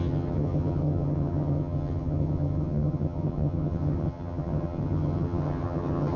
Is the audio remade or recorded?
remade